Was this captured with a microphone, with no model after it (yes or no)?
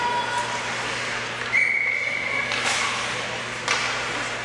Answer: yes